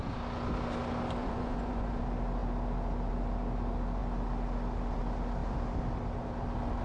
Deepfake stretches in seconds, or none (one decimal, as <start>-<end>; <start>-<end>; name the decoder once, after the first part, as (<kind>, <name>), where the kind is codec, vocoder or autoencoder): 1.2-2.0 (vocoder, Vocos)